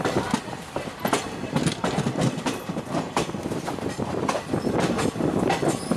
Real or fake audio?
real